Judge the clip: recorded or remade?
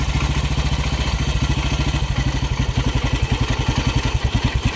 recorded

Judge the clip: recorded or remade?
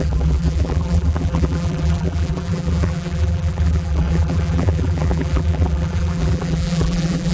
remade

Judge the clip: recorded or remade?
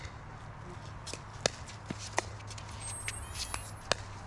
recorded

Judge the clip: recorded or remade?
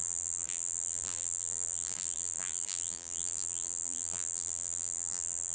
remade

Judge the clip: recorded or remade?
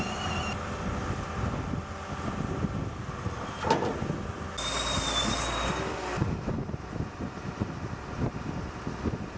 recorded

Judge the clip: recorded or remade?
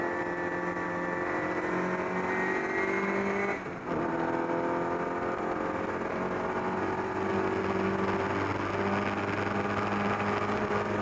recorded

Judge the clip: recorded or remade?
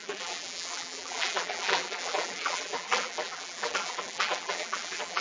remade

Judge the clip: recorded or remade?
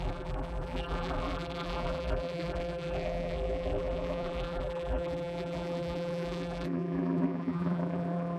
remade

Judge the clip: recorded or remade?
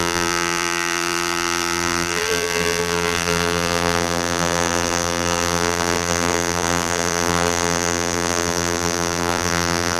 remade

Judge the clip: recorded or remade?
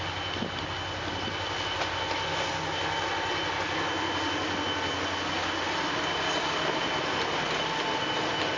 recorded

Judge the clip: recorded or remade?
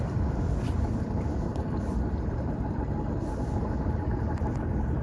recorded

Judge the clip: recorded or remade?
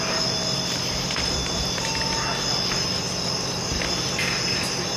recorded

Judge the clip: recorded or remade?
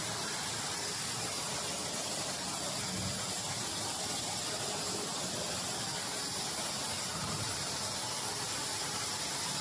recorded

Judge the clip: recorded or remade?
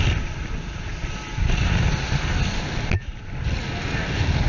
recorded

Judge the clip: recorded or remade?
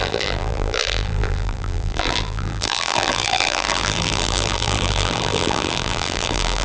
remade